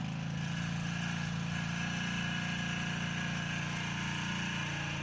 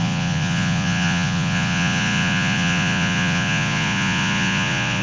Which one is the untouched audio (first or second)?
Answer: first